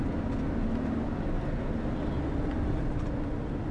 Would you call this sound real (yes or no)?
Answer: yes